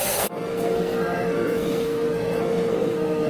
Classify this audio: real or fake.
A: fake